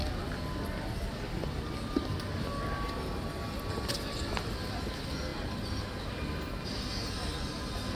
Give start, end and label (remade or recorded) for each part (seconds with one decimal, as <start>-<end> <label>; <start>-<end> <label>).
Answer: 0.0-8.0 recorded